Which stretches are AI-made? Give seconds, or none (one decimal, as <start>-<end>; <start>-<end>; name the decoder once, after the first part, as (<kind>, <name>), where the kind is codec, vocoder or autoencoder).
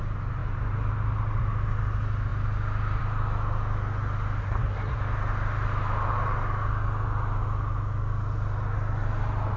4.4-5.0 (codec, SNAC)